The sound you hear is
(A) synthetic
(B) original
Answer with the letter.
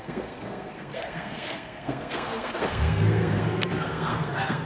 A